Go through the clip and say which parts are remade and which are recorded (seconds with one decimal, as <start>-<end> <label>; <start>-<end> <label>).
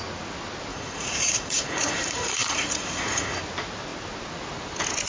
0.0-0.7 recorded; 0.7-3.4 remade; 3.4-5.1 recorded